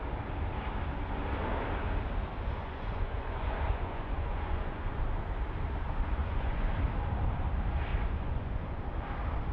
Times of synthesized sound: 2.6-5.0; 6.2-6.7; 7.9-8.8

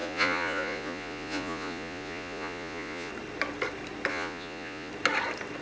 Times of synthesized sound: 0.0-3.1; 4.1-4.9

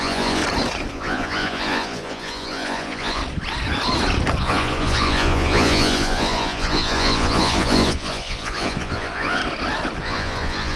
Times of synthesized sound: 0.0-0.4; 0.9-3.2; 4.4-9.4; 10.0-10.8

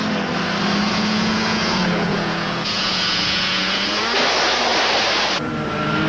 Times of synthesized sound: 0.9-4.0

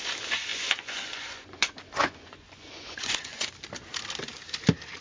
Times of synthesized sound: 0.5-3.5

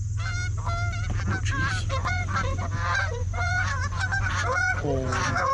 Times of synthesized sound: 2.0-5.5

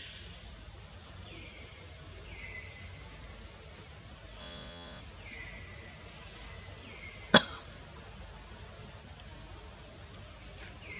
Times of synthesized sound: 4.4-5.0